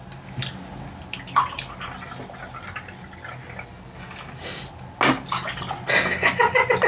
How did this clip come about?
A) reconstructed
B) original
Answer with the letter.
B